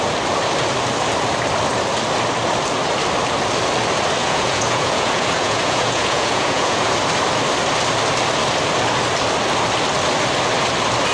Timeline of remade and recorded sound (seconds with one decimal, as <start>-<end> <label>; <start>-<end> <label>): 0.0-4.2 recorded; 4.2-6.9 remade; 6.9-11.1 recorded

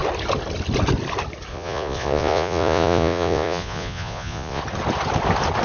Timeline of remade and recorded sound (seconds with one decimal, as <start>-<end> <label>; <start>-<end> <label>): 0.0-1.5 recorded; 1.5-4.6 remade; 4.6-5.6 recorded

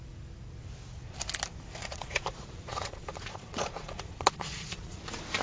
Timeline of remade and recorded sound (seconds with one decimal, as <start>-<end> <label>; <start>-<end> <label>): 0.0-1.8 recorded; 1.8-5.0 remade; 5.0-5.4 recorded

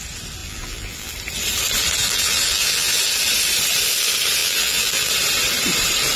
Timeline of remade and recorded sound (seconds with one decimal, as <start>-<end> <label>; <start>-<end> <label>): 0.0-0.4 recorded; 0.4-1.1 remade; 1.1-2.0 recorded; 2.0-3.0 remade; 3.0-4.4 recorded; 4.4-5.1 remade; 5.1-6.2 recorded

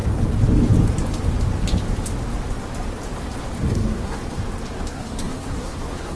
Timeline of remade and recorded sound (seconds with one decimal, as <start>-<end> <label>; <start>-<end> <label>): 0.0-3.7 recorded; 3.7-4.2 remade; 4.2-4.9 recorded; 4.9-6.2 remade

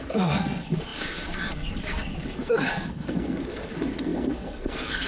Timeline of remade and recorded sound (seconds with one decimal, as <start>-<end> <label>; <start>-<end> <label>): 0.0-5.1 remade

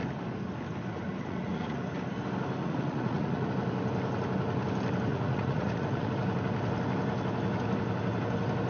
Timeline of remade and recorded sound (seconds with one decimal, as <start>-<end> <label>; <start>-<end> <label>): 0.0-1.2 recorded; 1.2-1.8 remade; 1.8-2.6 recorded; 2.6-3.5 remade; 3.5-5.1 recorded; 5.1-6.1 remade; 6.1-8.7 recorded